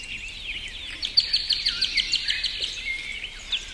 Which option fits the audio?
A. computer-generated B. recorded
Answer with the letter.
B